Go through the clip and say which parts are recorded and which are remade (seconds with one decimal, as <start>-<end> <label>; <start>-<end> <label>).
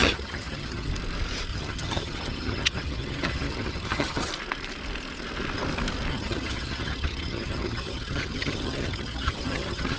0.0-0.9 remade; 0.9-1.5 recorded; 1.5-4.3 remade; 4.3-6.1 recorded; 6.1-10.0 remade